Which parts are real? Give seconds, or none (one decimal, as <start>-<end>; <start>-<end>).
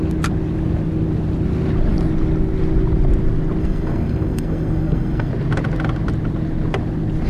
0.0-3.6; 5.3-7.3